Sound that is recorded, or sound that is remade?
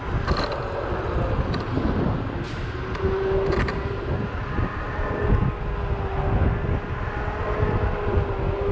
recorded